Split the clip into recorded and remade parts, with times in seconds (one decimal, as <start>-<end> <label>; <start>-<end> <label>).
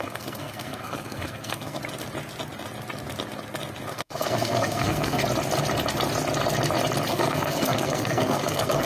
0.0-1.8 remade; 1.8-3.9 recorded; 3.9-5.2 remade; 5.2-7.1 recorded; 7.1-8.9 remade